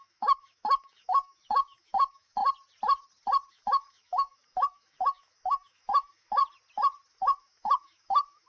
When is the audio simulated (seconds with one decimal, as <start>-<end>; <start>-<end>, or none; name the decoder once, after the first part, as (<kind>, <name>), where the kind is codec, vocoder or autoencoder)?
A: 0.0-2.4 (autoencoder, DAC-VAE); 3.5-6.4; 7.1-8.5